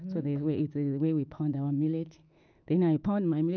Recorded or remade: remade